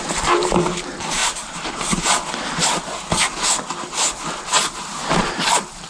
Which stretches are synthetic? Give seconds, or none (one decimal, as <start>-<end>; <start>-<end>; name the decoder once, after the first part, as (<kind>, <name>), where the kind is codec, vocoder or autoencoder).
0.0-1.2 (vocoder, BigVGAN v2); 4.6-5.9